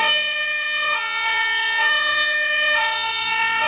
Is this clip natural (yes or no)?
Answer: no